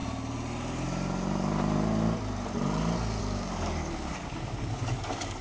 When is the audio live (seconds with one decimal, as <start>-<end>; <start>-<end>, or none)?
0.0-3.2